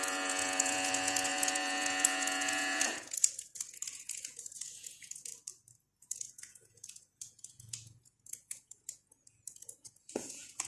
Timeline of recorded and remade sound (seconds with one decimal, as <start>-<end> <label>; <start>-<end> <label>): 0.0-5.3 remade; 5.3-6.0 recorded; 6.0-10.7 remade